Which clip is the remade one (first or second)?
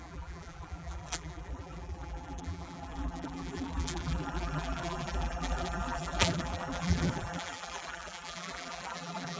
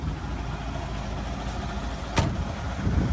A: first